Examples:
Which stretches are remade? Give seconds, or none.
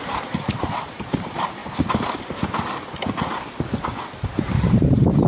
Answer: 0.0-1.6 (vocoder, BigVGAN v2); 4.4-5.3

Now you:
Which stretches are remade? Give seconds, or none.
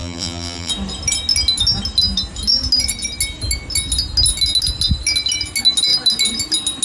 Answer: 0.0-0.7 (vocoder, BigVGAN v2)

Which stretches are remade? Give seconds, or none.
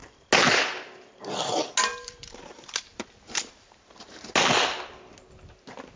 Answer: 1.9-4.3 (vocoder, BigVGAN v2)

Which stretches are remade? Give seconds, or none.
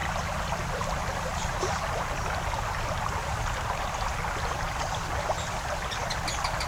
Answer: none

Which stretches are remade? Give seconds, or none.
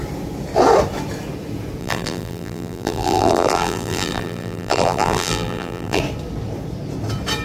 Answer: 1.8-6.0 (vocoder, BigVGAN v2)